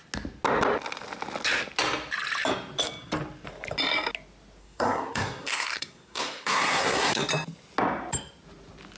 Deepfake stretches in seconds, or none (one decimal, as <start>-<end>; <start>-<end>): 4.6-7.3